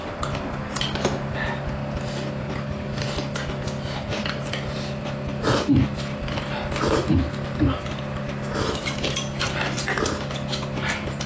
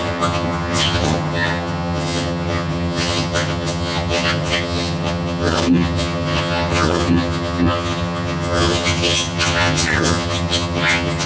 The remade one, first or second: second